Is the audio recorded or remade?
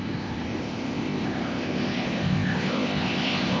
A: remade